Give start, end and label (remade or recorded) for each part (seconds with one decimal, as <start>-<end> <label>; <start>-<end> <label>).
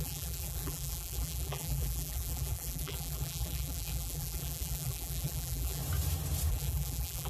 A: 0.0-5.8 remade; 5.8-6.5 recorded; 6.5-7.3 remade